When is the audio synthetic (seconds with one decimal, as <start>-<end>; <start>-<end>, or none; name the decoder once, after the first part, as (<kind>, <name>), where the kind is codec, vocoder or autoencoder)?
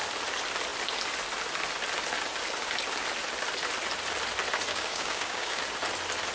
4.7-5.6 (codec, DAC)